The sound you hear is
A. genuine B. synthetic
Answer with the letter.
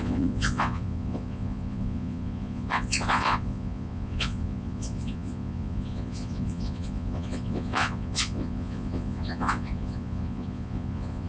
B